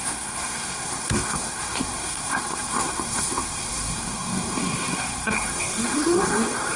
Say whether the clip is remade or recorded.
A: remade